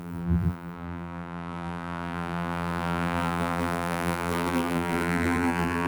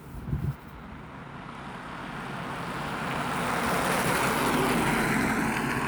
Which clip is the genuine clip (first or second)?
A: second